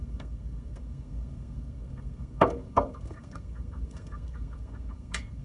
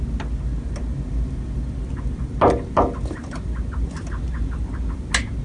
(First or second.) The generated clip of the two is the first